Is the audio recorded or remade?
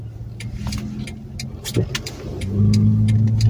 recorded